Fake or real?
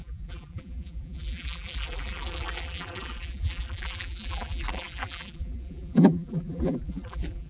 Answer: fake